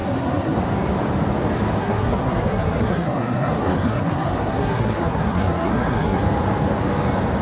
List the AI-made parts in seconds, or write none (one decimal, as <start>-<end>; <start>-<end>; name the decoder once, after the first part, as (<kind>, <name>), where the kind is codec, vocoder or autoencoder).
0.0-0.6 (codec, SNAC); 1.8-6.2